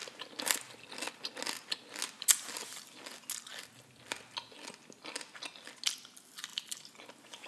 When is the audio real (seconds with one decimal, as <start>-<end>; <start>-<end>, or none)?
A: 0.0-7.5